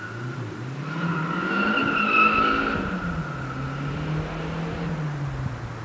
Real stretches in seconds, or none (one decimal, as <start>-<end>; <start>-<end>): 0.0-5.8